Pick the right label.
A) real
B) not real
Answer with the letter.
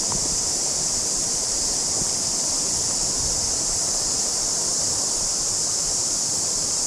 A